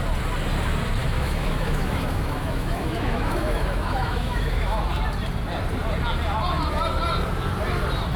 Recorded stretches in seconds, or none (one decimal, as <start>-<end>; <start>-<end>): 0.0-1.0; 4.8-8.2